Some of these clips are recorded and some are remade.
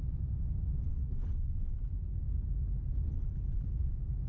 recorded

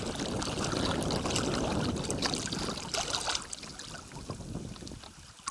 recorded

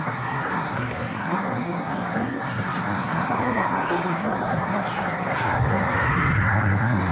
remade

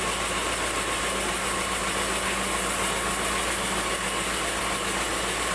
recorded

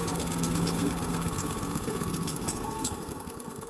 remade